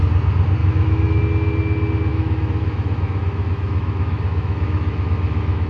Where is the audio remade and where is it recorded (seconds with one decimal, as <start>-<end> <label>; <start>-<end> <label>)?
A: 0.0-0.6 recorded; 0.6-1.2 remade; 1.2-2.1 recorded; 2.1-5.7 remade